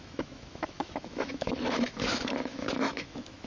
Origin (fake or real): fake